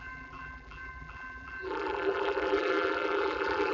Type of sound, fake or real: fake